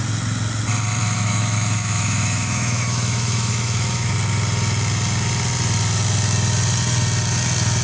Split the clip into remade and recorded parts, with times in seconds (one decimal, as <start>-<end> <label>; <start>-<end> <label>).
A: 0.0-1.0 recorded; 1.0-4.1 remade; 4.1-7.8 recorded